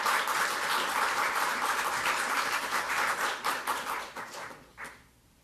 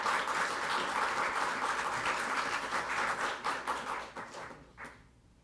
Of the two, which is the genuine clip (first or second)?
second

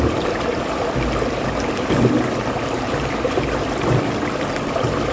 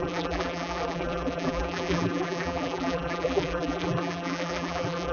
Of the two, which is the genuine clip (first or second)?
first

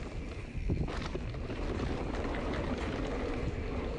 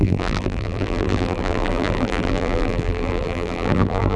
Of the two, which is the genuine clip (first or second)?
first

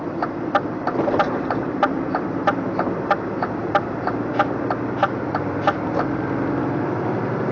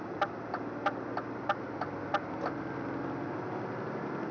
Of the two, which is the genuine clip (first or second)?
second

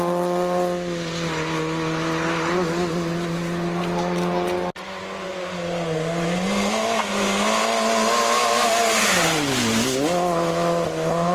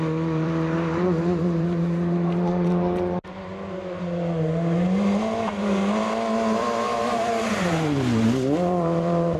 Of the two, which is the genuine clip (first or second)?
first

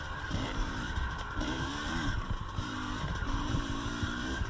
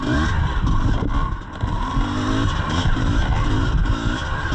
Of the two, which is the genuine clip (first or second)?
second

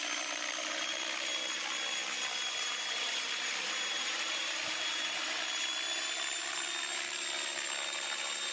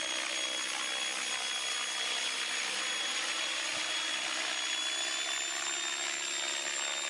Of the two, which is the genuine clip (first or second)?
second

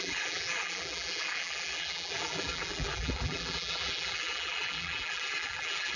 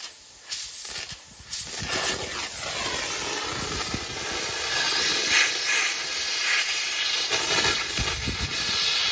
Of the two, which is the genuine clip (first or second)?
second